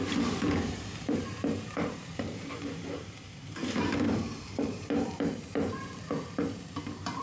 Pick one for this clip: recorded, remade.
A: remade